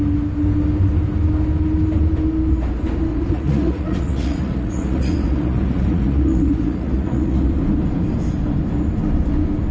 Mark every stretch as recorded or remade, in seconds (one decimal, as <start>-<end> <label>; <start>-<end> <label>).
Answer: 0.0-3.1 recorded; 3.1-7.5 remade; 7.5-9.7 recorded